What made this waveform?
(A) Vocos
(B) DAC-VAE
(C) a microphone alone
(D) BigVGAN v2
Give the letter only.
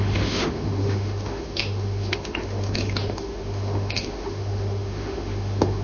B